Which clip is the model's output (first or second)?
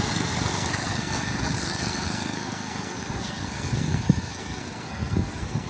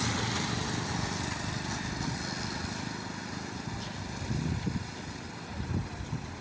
first